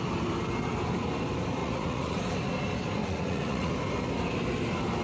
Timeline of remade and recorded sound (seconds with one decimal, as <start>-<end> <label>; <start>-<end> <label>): 0.0-1.6 recorded; 1.6-2.2 remade; 2.2-3.0 recorded; 3.0-3.7 remade; 3.7-5.0 recorded